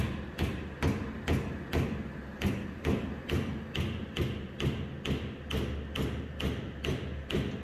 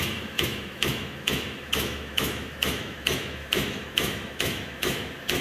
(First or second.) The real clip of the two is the first